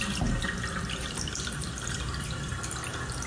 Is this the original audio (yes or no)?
yes